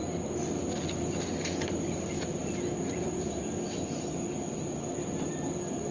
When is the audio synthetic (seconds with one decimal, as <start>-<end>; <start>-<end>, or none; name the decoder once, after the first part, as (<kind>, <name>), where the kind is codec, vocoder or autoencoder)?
none